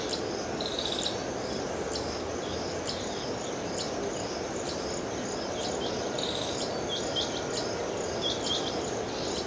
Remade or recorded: recorded